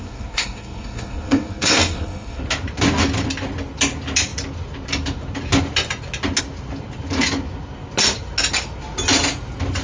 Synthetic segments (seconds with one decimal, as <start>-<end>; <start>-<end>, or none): 0.0-2.4